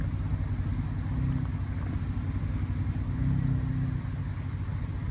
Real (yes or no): yes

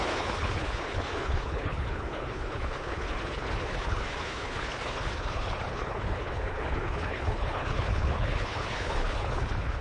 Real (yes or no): no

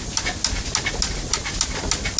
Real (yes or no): yes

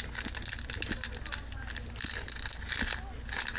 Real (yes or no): yes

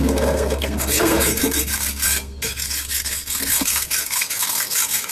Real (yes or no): no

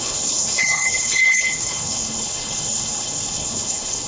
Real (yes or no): no